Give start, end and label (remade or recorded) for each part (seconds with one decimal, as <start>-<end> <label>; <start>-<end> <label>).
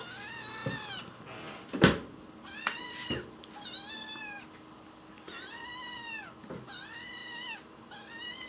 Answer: 0.0-8.5 recorded